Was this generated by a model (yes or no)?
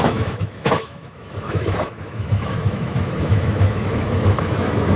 yes